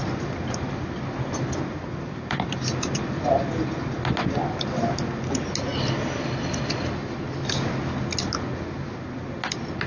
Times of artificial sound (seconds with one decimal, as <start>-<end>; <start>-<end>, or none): none